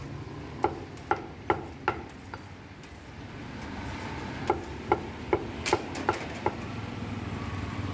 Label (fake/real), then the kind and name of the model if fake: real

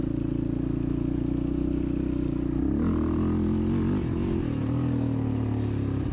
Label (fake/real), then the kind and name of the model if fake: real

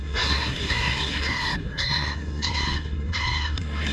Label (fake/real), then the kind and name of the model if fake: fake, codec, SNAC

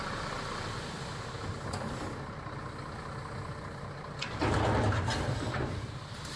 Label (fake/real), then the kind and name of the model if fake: real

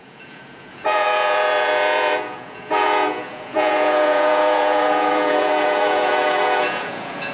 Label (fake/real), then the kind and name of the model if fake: fake, vocoder, Vocos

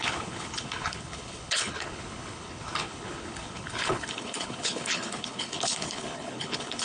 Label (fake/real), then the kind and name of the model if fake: fake, codec, HILCodec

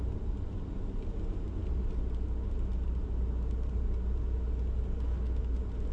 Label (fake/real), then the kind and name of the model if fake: real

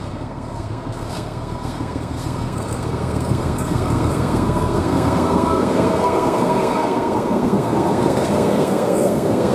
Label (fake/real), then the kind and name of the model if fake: fake, codec, SNAC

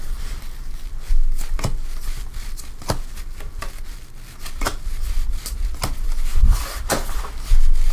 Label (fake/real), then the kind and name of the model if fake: real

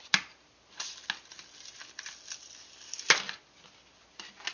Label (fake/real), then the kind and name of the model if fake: real